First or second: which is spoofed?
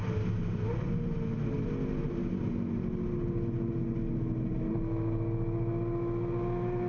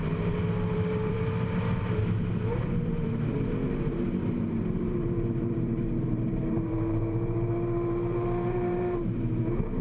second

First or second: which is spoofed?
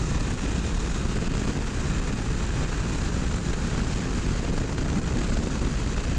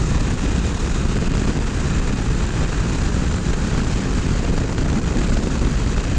second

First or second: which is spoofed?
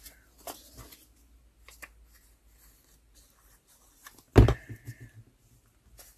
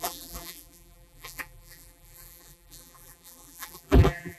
second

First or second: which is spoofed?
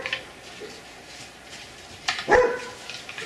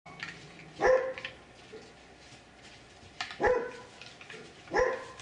first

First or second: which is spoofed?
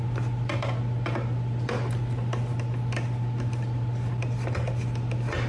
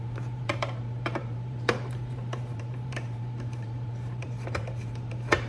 second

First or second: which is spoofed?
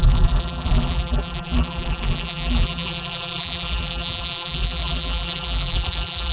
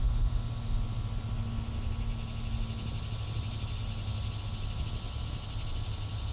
first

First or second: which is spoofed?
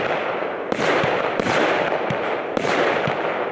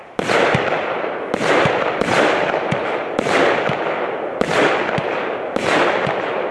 second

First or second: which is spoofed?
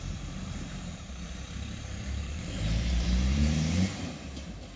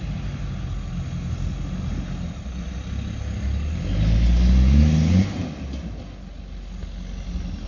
first